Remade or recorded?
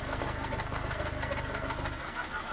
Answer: remade